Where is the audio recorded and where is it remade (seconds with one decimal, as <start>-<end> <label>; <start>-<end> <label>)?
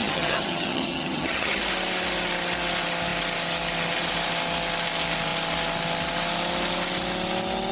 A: 0.0-1.6 remade; 1.6-7.7 recorded